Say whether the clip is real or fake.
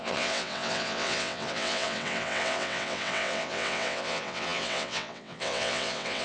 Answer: fake